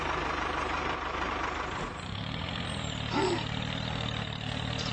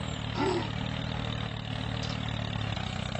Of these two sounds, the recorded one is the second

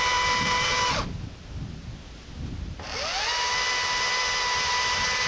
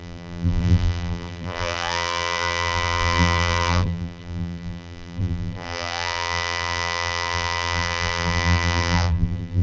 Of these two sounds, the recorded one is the first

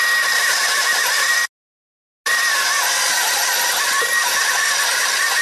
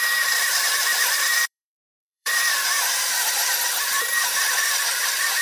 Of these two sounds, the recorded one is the first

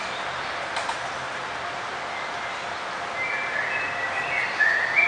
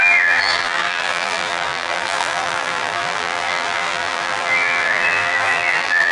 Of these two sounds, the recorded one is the first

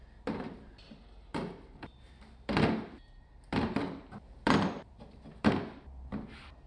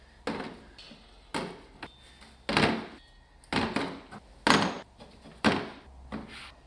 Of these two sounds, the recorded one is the second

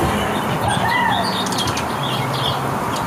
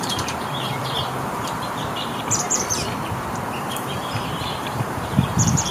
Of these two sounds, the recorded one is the first